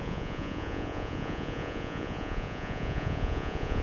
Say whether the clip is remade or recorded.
remade